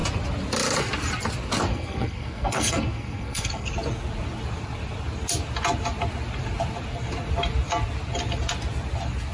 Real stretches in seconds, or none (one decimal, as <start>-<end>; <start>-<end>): 0.0-1.7; 3.7-9.3